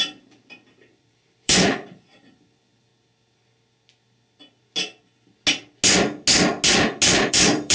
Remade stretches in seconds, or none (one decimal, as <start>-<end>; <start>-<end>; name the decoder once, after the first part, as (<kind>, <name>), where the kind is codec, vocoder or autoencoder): 0.0-2.9 (vocoder, BigVGAN v2); 7.3-7.7